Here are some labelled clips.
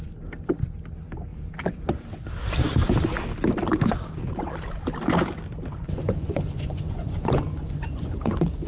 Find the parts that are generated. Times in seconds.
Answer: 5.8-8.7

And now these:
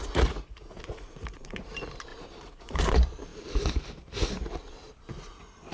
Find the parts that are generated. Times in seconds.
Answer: 0.0-1.7; 2.1-2.9